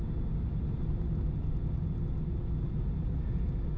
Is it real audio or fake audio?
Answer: real